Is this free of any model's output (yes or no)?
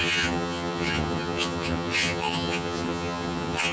no